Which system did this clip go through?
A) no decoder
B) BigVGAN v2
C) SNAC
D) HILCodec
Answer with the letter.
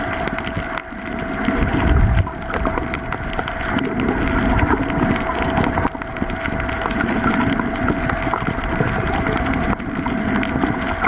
A